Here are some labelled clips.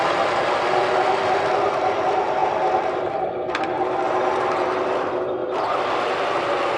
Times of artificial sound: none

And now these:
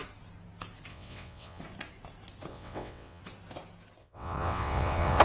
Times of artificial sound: 0.9-1.6 (vocoder, WaveNeXt); 2.5-3.2; 4.0-5.2